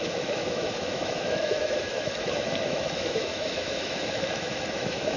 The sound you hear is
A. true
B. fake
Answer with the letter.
B